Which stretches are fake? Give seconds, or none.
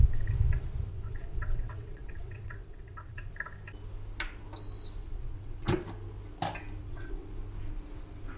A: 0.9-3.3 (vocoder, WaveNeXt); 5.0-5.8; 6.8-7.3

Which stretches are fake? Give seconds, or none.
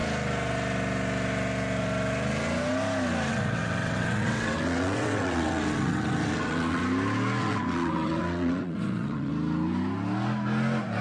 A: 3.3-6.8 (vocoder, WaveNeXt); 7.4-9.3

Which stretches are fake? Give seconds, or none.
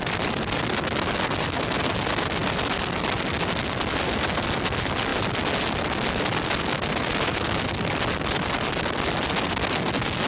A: 2.4-4.1 (vocoder, BigVGAN v2)